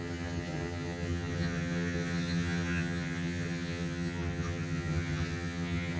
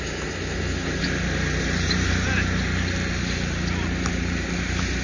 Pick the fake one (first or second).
first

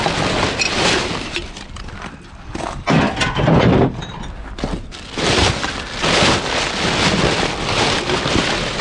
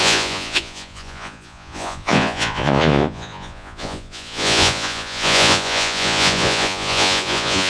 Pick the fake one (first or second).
second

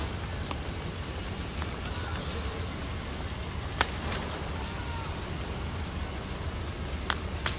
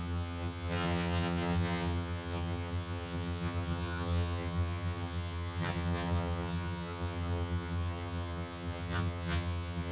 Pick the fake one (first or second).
second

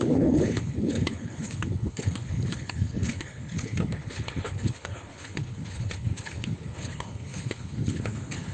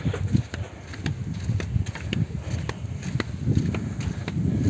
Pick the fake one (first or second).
first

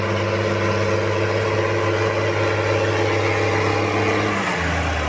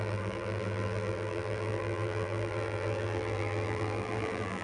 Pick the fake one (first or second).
second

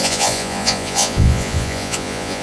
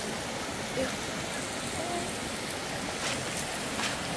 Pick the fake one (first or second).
first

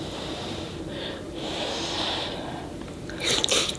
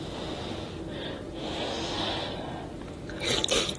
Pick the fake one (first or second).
first